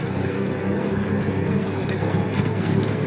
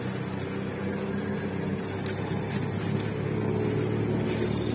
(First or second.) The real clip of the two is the second